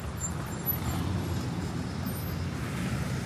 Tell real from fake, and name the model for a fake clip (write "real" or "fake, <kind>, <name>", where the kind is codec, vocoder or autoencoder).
real